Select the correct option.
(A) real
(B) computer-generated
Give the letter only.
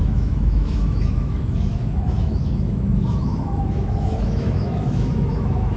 B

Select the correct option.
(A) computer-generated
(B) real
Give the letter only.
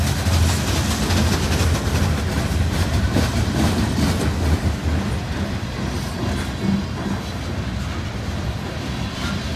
B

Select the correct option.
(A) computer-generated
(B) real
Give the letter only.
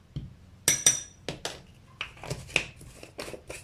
B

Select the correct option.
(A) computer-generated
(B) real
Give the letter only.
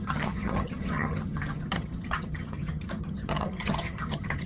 A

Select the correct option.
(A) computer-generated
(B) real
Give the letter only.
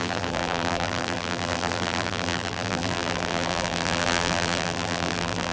A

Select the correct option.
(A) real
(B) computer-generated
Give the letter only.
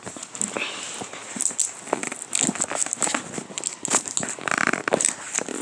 A